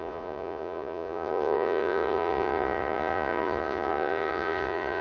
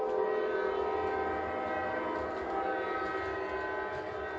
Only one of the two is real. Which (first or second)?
second